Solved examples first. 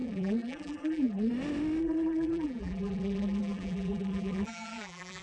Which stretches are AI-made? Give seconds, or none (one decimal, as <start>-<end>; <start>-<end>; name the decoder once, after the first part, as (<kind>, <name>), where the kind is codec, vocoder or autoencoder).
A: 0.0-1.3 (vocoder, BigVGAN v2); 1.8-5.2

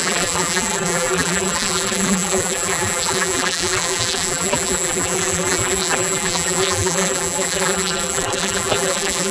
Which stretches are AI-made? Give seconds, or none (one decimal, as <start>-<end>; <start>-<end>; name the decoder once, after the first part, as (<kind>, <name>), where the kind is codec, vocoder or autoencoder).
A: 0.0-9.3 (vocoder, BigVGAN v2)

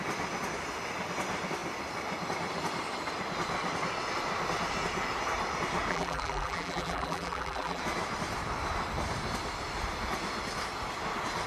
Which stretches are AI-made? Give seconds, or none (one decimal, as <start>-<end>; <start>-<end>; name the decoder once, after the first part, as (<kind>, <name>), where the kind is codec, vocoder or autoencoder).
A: 5.9-7.8 (vocoder, BigVGAN v2)

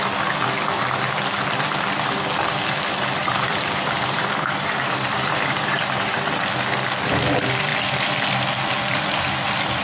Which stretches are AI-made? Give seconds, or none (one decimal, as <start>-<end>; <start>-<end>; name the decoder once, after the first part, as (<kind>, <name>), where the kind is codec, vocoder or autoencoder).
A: 3.2-6.2 (vocoder, BigVGAN v2)